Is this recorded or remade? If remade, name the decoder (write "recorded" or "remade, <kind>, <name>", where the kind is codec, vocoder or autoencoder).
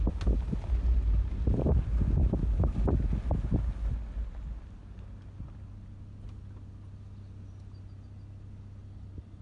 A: recorded